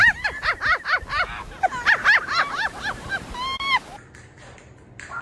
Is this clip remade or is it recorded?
recorded